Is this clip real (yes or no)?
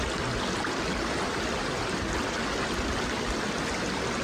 yes